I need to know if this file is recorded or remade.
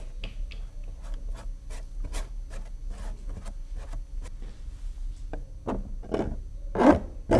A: recorded